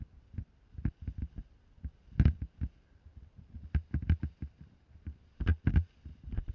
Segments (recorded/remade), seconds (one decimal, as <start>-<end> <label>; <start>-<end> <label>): 0.0-6.5 recorded